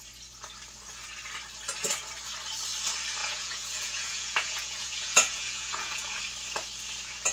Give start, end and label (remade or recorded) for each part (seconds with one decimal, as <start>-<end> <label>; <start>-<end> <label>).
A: 0.0-3.2 recorded; 3.2-6.2 remade; 6.2-7.3 recorded